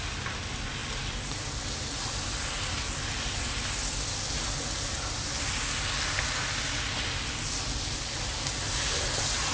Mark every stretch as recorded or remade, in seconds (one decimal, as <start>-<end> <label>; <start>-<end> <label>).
0.0-9.5 recorded